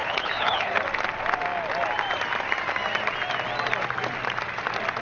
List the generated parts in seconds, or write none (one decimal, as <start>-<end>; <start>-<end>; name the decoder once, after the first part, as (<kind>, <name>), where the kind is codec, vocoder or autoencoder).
0.0-0.8 (codec, HILCodec)